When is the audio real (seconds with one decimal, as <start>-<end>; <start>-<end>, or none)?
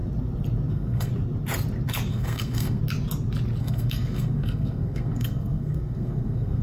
0.0-0.7; 1.1-2.1; 2.8-3.6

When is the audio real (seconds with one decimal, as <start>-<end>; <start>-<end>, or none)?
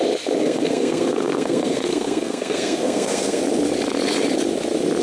0.0-0.4; 3.4-5.0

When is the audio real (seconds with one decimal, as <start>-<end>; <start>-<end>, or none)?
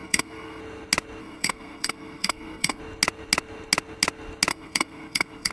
0.6-1.2; 2.8-4.5